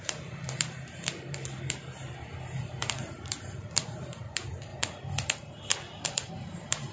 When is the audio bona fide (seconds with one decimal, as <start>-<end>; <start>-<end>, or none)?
4.7-6.3